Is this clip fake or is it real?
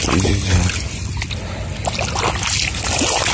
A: real